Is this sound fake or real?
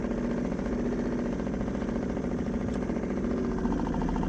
real